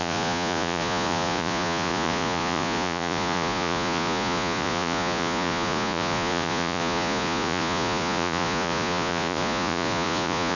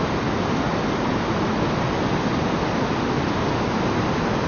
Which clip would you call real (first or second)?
second